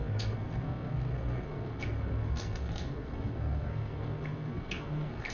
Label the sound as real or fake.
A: fake